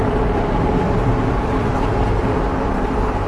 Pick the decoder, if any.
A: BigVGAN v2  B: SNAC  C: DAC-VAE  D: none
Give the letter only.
A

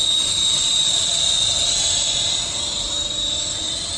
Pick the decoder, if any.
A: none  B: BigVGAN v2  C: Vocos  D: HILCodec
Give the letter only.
B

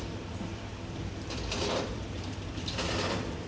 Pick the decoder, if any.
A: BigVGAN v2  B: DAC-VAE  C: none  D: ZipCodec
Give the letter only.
A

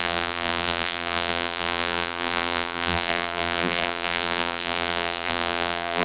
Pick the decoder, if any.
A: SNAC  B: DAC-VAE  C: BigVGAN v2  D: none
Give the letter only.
C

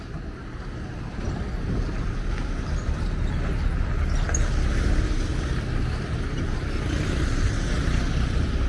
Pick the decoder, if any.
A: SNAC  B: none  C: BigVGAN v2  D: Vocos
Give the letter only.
B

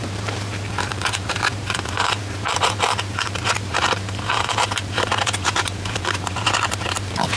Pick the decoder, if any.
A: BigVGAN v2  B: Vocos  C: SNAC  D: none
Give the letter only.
A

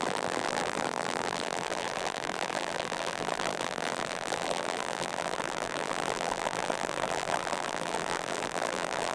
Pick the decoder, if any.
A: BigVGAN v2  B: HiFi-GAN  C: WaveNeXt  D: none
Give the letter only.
A